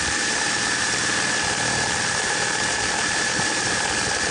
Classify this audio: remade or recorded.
remade